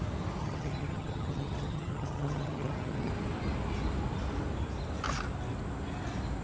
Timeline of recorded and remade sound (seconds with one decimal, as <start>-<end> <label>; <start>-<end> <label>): 0.0-0.4 recorded; 0.4-3.1 remade; 3.1-6.4 recorded